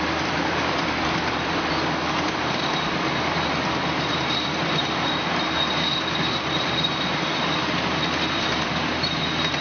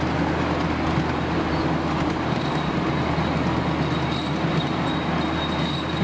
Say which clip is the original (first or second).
second